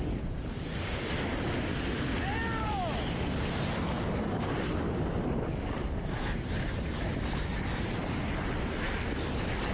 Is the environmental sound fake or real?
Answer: real